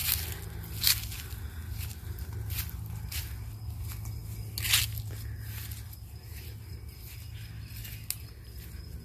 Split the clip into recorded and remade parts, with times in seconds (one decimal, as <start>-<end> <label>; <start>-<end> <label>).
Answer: 0.0-9.0 recorded